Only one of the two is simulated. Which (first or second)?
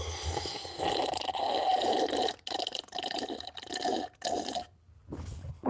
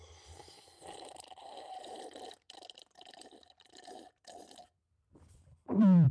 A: second